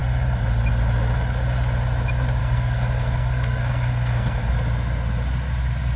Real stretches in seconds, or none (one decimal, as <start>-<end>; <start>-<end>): 0.0-2.4; 4.5-6.0